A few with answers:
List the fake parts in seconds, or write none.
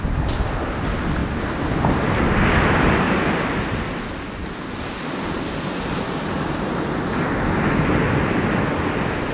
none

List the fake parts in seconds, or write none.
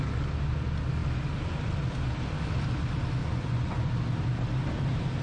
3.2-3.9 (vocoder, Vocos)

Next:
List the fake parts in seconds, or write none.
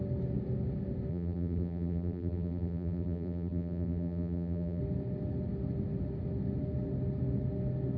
1.1-4.8 (vocoder, BigVGAN v2)